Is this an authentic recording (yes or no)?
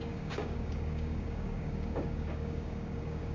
no